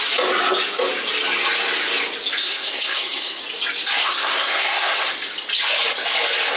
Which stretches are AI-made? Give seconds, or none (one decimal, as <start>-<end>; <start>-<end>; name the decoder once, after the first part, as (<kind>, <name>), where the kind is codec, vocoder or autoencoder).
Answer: 2.4-3.4 (codec, SNAC); 4.0-5.0